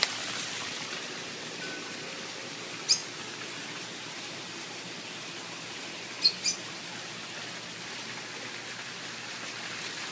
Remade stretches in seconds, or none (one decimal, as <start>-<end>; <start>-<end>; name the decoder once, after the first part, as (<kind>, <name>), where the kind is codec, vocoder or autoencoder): none